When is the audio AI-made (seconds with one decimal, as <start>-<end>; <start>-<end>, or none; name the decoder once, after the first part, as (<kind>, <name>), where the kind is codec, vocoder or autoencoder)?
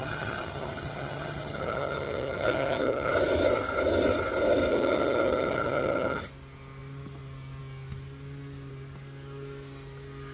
0.0-3.1 (vocoder, HiFi-GAN); 4.7-6.2